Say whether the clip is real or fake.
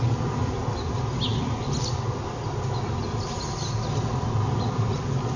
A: real